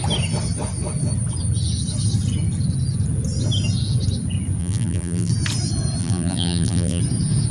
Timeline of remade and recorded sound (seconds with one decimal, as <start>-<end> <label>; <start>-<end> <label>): 0.0-4.6 recorded; 4.6-5.3 remade; 5.3-6.0 recorded; 6.0-7.0 remade; 7.0-7.5 recorded